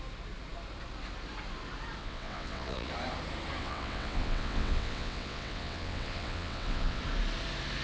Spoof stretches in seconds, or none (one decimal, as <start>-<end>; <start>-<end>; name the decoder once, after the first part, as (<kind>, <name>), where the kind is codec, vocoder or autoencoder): 2.0-2.9 (vocoder, WaveNeXt); 3.6-7.0